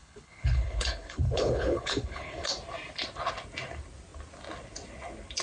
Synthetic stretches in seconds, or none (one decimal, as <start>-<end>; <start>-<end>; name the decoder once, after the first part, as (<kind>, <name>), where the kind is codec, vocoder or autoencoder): 0.0-2.5 (codec, HILCodec)